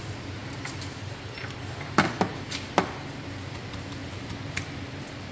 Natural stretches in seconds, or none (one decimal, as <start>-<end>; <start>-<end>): 0.0-4.0; 4.6-5.3